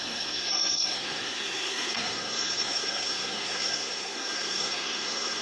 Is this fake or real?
fake